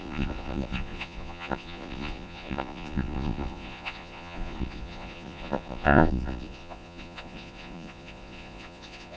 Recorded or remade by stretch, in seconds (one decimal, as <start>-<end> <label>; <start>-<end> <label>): 0.0-9.2 remade